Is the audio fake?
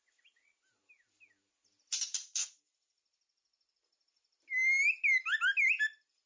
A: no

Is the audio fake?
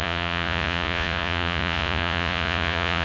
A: yes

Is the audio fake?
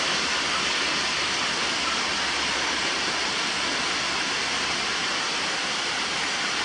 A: no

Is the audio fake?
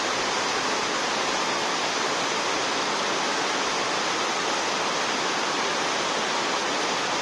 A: no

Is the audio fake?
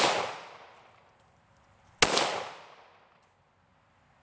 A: no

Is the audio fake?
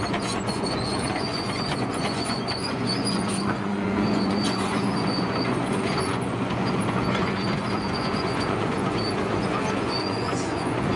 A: yes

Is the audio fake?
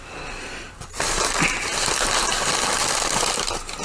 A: no